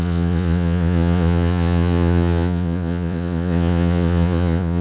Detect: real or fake fake